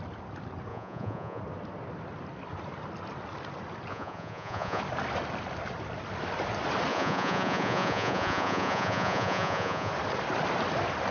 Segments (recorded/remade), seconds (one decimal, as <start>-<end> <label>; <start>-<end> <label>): 0.0-0.7 recorded; 0.7-1.4 remade; 1.4-3.9 recorded; 3.9-4.8 remade; 4.8-6.9 recorded; 6.9-9.9 remade; 9.9-11.1 recorded